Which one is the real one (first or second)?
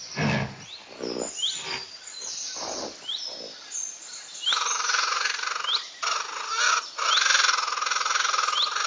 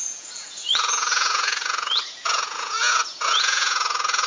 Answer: first